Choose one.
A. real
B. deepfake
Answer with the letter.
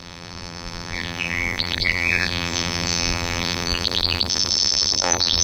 B